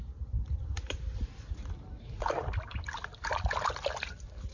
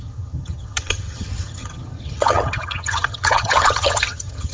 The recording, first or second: first